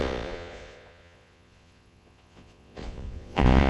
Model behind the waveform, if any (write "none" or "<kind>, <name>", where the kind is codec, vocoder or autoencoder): vocoder, Vocos